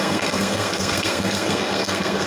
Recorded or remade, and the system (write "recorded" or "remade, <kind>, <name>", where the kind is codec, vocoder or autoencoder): remade, codec, SNAC